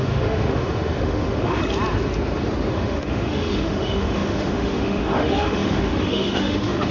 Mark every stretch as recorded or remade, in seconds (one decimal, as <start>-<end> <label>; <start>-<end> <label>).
0.0-1.6 remade; 1.6-2.7 recorded; 2.7-6.9 remade